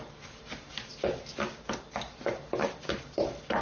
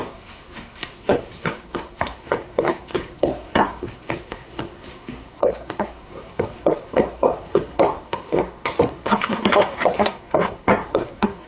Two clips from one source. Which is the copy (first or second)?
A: second